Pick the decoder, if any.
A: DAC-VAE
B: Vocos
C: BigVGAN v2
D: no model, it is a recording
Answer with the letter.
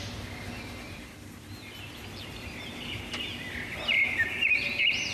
D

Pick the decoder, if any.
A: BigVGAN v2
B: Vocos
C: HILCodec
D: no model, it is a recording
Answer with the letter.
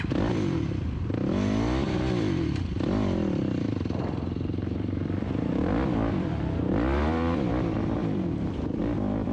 A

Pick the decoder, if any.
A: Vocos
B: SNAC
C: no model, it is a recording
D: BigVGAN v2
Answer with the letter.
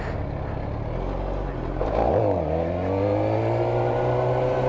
C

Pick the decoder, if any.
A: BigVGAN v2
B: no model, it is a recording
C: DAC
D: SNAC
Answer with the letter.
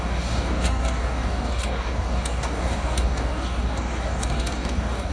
C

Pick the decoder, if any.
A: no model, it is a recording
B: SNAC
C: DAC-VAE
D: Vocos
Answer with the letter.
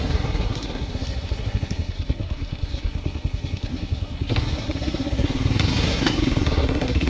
B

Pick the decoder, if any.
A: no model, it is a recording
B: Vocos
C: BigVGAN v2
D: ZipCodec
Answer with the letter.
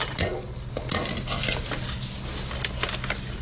A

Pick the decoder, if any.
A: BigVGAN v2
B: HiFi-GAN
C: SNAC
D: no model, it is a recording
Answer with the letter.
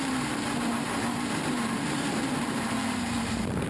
A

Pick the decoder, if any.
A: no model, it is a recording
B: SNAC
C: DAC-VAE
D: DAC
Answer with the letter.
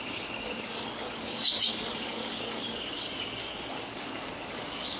D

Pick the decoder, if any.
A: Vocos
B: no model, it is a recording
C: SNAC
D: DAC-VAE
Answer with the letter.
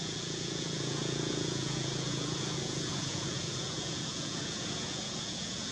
A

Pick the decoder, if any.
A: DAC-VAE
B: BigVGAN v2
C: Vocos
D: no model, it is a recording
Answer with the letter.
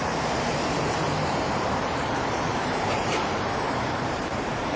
B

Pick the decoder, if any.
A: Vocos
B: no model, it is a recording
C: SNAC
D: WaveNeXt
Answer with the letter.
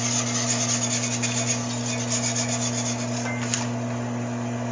B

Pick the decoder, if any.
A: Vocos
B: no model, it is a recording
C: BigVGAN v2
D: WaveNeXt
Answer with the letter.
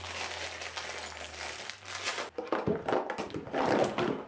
B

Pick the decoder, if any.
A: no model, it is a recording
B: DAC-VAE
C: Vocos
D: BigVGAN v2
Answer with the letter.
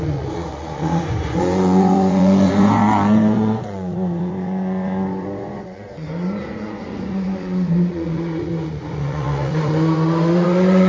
C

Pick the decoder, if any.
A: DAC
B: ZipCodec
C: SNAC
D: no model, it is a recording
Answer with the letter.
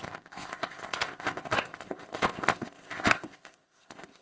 B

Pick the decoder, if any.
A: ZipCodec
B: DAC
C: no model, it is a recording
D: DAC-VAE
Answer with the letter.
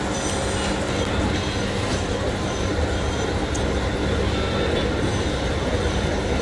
C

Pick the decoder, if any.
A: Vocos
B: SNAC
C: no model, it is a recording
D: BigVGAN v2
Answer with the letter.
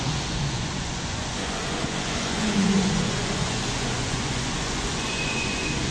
A